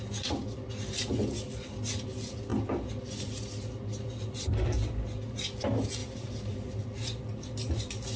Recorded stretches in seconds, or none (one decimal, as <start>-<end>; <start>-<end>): 0.0-6.0; 6.8-8.2